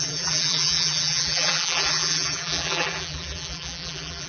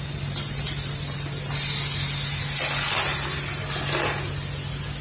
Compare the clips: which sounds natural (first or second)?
second